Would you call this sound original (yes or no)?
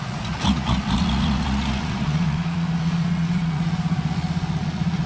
no